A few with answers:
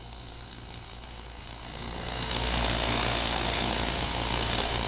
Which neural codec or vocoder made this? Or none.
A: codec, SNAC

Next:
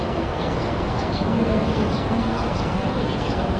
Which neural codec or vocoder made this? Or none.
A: codec, SNAC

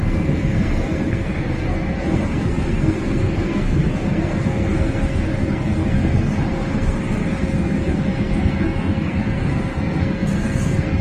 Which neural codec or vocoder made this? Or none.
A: codec, SNAC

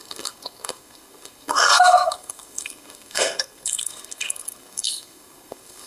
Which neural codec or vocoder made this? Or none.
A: codec, SNAC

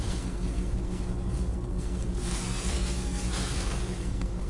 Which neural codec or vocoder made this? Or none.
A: codec, SNAC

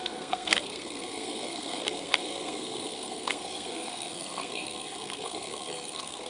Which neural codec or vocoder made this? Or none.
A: codec, SNAC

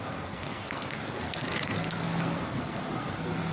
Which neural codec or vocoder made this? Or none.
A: codec, SNAC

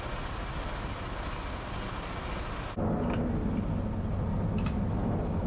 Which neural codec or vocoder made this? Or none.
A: none